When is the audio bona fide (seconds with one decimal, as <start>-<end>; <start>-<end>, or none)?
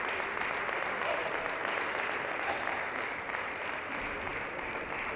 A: 0.0-5.2